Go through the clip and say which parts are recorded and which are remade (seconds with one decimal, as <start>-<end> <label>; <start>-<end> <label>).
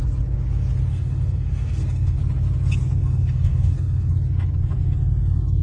0.0-0.9 recorded; 0.9-2.2 remade; 2.2-3.0 recorded; 3.0-4.1 remade; 4.1-5.6 recorded